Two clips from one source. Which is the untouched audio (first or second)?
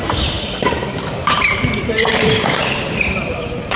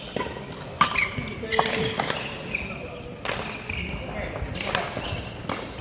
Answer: second